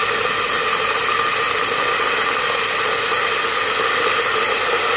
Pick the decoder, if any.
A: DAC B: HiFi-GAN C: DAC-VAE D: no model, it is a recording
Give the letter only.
D